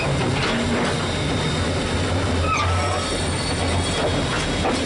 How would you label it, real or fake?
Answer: real